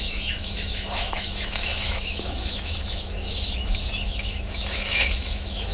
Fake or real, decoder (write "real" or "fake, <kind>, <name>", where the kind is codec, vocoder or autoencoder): fake, autoencoder, DAC-VAE